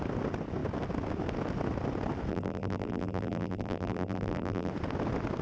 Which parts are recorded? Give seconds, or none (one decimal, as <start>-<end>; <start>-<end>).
0.0-2.3; 4.7-5.4